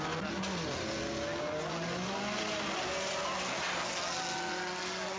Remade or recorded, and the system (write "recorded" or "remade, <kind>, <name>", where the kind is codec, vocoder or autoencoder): recorded